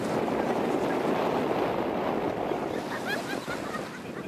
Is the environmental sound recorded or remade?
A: recorded